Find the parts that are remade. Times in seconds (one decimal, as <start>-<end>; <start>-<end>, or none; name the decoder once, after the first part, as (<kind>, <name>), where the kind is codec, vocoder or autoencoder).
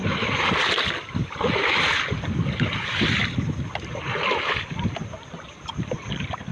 none